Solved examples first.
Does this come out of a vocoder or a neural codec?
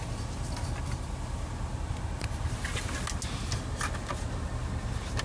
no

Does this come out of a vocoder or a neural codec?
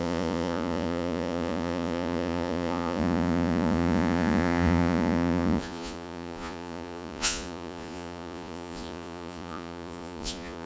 yes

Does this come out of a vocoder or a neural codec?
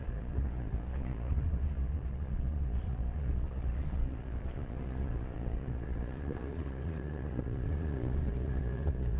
yes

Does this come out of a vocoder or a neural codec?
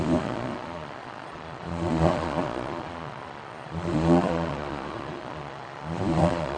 yes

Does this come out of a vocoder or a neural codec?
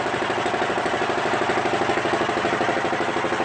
no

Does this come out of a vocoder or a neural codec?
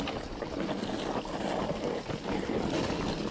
no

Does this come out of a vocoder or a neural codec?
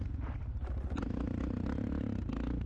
no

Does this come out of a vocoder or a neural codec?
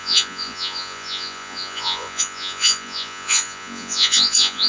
yes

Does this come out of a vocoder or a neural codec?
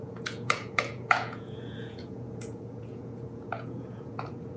yes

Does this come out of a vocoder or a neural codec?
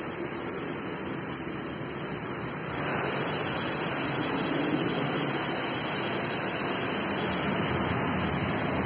no